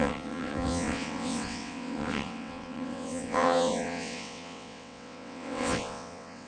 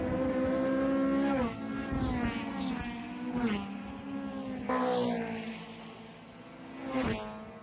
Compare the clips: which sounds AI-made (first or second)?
first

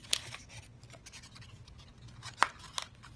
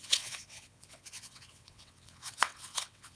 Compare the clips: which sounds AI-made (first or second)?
second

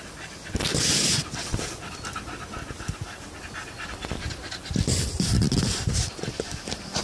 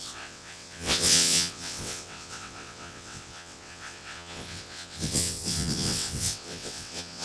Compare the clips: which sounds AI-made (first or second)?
second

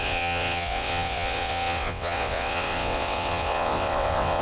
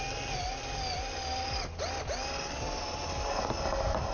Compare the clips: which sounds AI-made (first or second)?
first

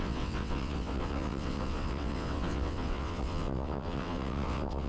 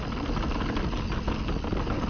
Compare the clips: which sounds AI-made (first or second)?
first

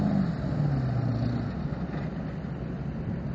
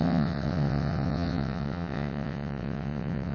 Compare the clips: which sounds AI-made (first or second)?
second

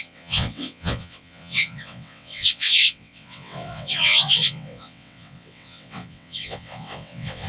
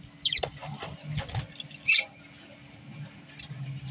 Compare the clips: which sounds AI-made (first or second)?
first